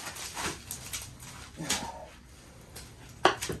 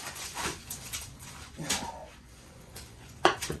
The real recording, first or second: first